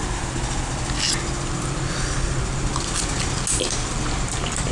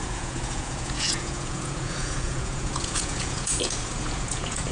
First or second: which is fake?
second